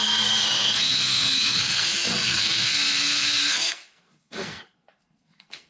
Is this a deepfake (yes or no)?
yes